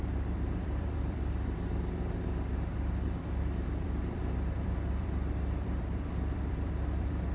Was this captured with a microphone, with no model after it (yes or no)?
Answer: no